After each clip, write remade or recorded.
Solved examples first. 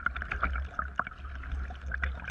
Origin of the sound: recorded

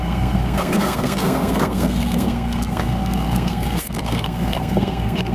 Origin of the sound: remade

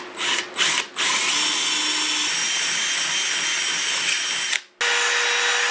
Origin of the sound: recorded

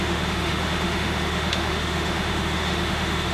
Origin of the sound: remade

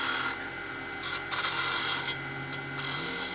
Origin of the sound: recorded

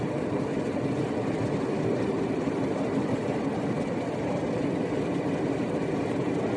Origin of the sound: recorded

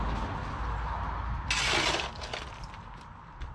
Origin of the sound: recorded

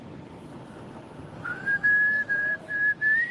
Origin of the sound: remade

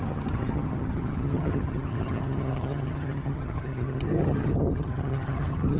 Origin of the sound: remade